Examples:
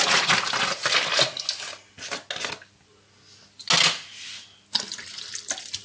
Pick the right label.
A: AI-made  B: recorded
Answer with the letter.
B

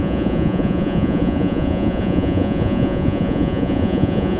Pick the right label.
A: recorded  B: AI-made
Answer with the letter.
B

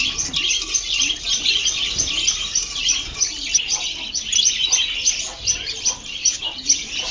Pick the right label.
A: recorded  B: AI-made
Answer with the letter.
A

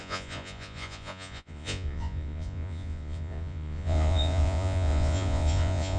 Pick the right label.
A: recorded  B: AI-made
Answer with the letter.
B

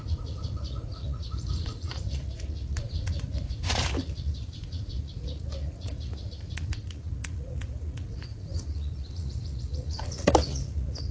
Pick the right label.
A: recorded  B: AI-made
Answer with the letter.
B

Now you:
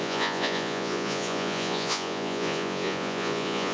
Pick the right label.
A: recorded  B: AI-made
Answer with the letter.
B